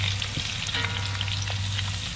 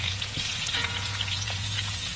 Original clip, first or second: first